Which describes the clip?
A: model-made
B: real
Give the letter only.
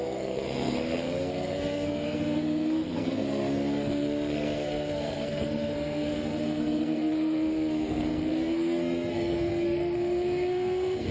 A